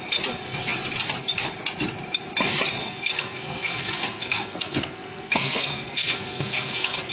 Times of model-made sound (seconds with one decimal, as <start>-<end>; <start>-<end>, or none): 2.8-7.1